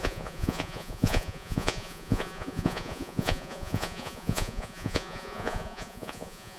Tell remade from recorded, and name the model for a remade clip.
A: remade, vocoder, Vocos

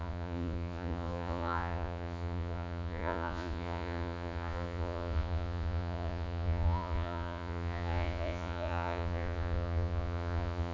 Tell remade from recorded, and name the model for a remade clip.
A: remade, vocoder, Vocos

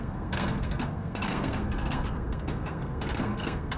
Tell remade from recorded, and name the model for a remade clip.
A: remade, codec, SNAC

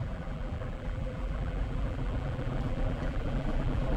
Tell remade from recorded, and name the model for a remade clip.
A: remade, vocoder, BigVGAN v2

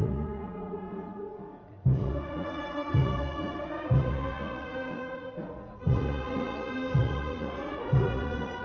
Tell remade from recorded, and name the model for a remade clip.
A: remade, vocoder, Vocos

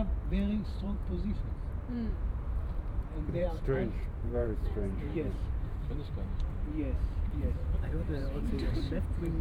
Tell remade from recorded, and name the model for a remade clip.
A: remade, vocoder, BigVGAN v2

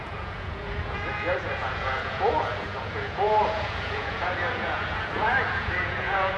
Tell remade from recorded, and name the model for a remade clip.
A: remade, vocoder, Vocos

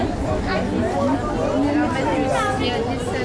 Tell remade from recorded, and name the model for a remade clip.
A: recorded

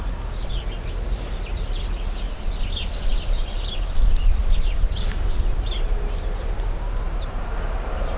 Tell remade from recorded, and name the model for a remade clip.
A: recorded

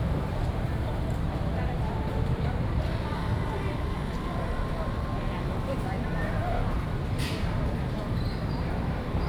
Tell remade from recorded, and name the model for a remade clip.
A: remade, vocoder, BigVGAN v2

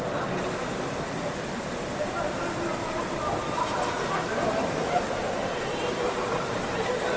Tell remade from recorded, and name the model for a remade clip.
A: recorded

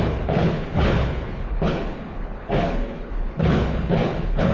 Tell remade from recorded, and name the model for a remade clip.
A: remade, codec, HILCodec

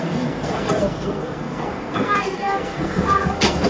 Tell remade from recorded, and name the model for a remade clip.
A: remade, codec, SNAC